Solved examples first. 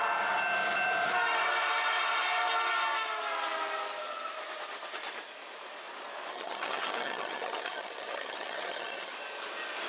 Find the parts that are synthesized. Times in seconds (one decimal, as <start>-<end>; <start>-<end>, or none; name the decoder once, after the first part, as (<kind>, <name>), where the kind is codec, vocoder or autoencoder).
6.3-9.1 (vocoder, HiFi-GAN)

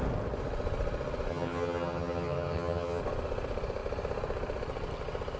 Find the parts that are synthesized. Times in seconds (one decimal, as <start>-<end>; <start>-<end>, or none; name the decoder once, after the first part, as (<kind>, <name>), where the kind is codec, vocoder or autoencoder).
1.3-3.0 (vocoder, HiFi-GAN)

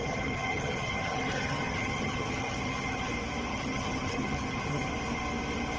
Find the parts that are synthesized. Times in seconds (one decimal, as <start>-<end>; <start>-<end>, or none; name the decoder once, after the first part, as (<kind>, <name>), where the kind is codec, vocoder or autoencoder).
0.0-3.1 (vocoder, HiFi-GAN); 3.5-4.9

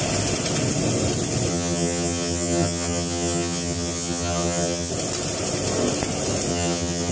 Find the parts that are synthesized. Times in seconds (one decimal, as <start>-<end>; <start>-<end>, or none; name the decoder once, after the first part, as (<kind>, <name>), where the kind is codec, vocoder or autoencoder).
1.5-4.9 (vocoder, HiFi-GAN); 6.5-7.1